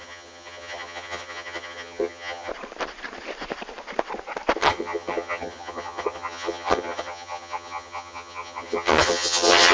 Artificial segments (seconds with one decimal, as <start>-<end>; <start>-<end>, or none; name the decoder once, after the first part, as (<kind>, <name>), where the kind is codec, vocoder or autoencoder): 0.0-2.5 (vocoder, HiFi-GAN); 4.6-9.7